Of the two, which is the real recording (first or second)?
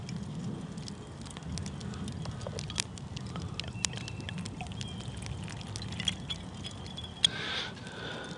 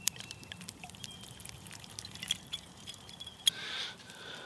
first